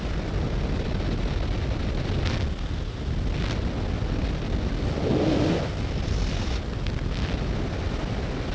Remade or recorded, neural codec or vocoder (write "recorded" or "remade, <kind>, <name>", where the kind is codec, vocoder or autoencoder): recorded